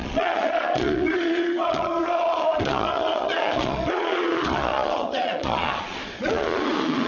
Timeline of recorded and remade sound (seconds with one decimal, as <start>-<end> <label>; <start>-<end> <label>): 0.0-7.1 remade